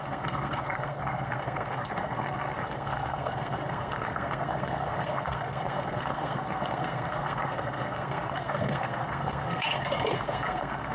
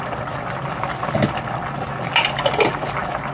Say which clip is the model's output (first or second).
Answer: first